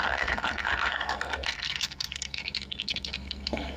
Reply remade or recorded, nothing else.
remade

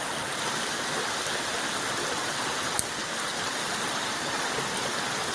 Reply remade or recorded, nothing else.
recorded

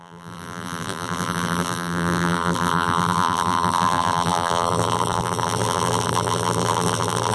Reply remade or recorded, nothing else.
remade